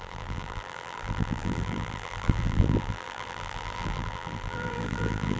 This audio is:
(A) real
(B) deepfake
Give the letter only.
B